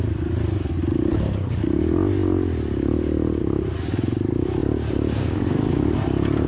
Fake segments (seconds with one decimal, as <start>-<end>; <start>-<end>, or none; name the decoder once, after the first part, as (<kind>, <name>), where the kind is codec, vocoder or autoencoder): 1.1-1.6 (codec, HILCodec)